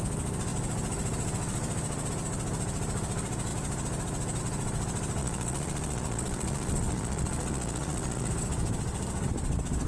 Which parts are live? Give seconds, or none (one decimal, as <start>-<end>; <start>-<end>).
0.0-5.2; 8.3-9.9